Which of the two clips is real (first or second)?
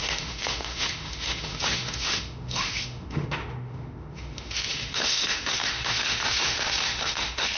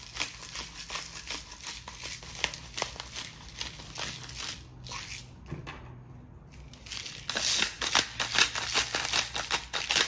second